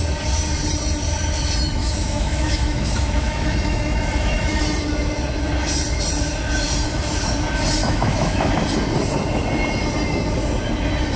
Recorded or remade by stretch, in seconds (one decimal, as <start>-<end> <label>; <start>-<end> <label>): 0.0-1.8 recorded; 1.8-4.6 remade; 4.6-7.8 recorded; 7.8-8.5 remade; 8.5-11.2 recorded